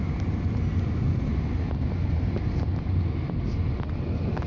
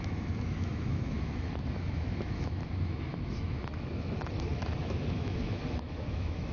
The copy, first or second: second